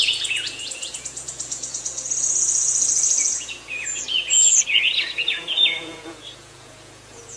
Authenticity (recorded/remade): remade